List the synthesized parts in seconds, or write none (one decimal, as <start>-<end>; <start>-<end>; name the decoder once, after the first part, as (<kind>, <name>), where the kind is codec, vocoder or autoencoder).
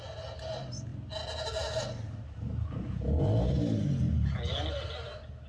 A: none